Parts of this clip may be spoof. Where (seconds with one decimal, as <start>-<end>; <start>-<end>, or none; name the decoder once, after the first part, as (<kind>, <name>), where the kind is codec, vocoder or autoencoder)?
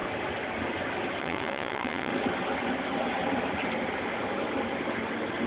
1.2-2.1 (vocoder, WaveNeXt)